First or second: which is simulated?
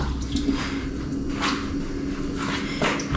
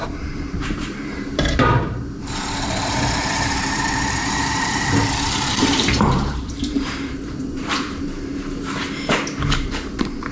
second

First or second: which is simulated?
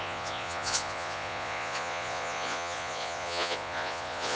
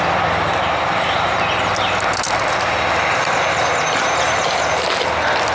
first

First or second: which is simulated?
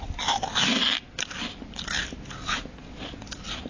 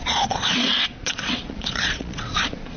second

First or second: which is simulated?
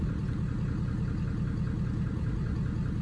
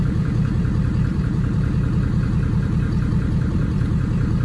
second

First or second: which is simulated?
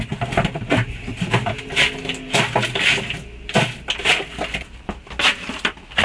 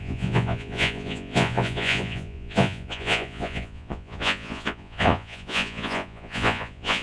second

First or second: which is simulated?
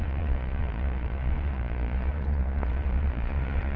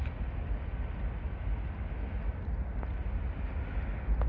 first